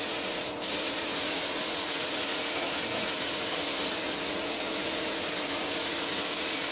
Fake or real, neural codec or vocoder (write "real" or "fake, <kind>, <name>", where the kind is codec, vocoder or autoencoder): fake, vocoder, Vocos